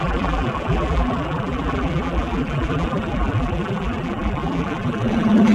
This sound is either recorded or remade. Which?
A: remade